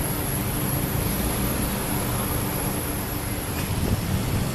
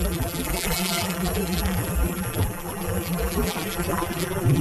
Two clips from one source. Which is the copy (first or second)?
second